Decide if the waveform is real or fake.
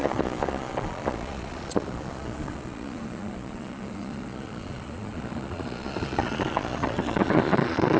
fake